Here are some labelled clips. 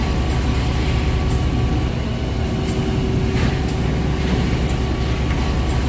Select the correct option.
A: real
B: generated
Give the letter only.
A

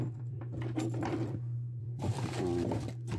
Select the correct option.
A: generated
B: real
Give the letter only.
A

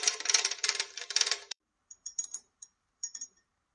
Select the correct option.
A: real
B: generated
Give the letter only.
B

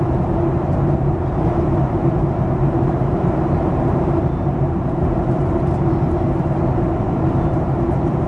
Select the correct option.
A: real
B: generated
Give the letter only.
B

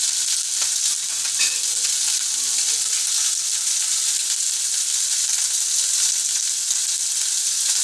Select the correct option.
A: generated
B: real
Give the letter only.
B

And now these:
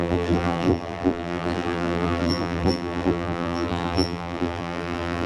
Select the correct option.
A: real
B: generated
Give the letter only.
B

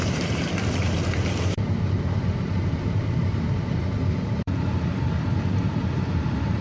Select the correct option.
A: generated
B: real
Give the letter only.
A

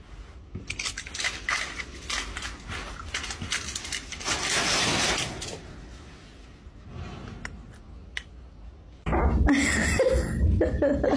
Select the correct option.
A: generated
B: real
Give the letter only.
B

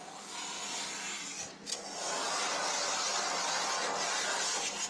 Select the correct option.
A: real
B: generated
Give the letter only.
A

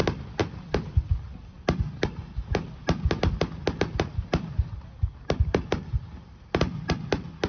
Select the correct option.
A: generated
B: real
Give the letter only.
B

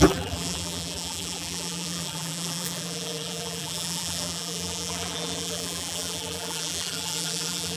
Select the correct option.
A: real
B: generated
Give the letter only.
B